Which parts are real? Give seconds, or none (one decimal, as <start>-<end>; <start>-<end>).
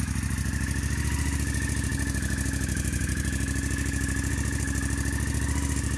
0.0-6.0